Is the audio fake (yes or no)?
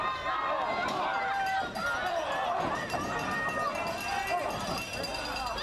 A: no